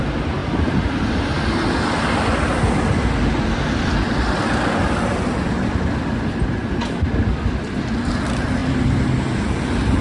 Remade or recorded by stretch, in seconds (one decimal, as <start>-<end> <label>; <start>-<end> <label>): 0.0-0.4 remade; 0.4-3.8 recorded; 3.8-10.0 remade